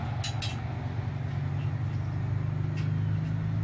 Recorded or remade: recorded